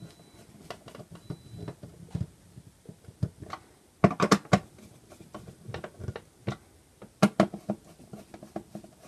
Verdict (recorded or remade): recorded